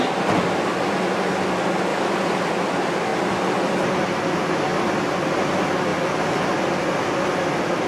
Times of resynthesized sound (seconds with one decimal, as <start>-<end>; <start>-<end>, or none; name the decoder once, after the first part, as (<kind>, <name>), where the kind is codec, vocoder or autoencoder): 1.9-2.5 (vocoder, BigVGAN v2); 5.9-6.5